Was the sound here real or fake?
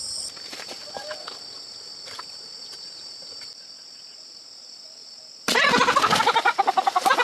real